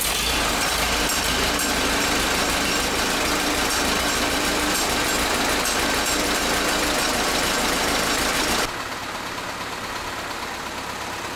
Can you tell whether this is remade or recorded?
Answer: recorded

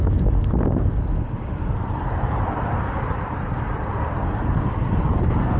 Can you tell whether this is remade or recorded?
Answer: recorded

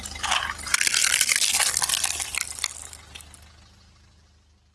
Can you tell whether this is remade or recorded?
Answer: recorded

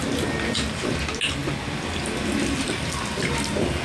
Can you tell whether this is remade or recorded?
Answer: recorded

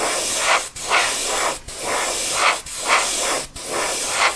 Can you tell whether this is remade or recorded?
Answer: recorded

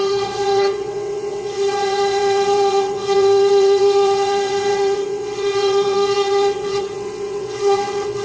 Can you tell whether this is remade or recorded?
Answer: remade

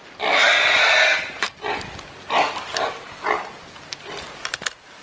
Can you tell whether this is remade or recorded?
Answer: recorded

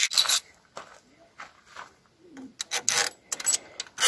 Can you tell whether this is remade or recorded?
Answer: recorded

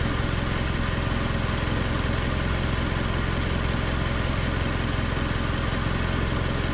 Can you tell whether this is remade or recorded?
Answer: recorded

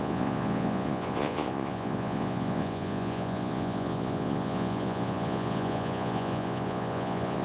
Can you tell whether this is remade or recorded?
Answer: remade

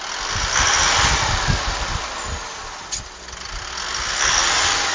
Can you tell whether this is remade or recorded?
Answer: recorded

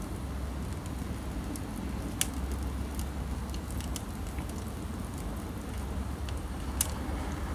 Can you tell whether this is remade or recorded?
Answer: recorded